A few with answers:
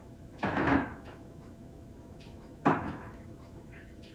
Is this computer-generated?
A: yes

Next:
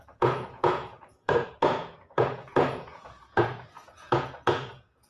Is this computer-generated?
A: yes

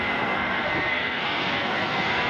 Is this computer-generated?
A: yes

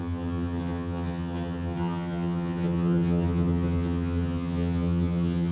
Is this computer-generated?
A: yes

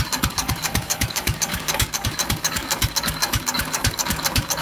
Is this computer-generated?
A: yes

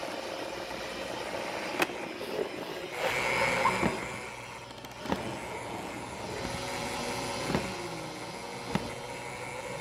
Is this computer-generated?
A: no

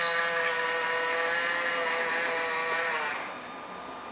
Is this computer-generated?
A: no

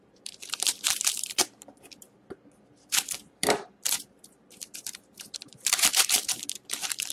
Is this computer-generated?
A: yes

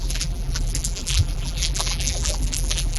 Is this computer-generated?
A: yes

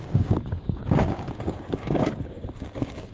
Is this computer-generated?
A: yes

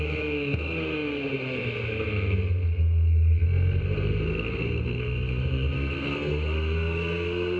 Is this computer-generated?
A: yes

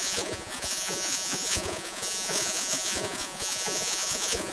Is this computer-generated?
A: yes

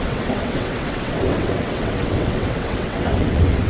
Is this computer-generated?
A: yes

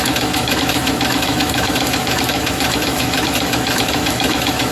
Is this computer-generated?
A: yes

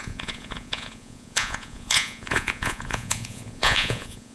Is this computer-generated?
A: yes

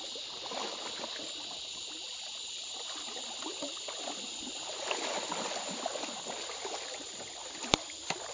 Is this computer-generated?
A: no